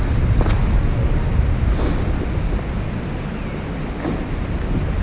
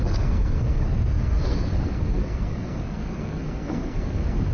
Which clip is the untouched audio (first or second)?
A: first